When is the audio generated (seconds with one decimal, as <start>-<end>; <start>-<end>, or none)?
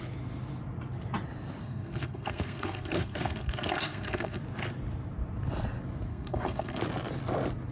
1.6-4.4; 6.1-6.8